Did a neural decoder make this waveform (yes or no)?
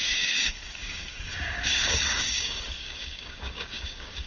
yes